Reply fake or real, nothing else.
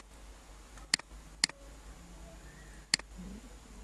real